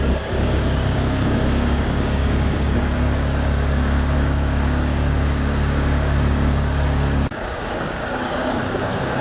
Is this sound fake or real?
fake